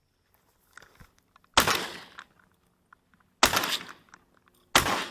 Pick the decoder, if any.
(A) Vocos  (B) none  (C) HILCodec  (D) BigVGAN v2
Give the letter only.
B